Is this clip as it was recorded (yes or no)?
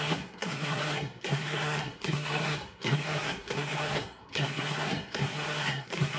no